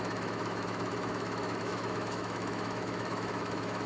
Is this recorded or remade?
remade